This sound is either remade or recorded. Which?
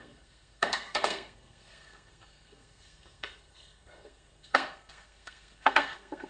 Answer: remade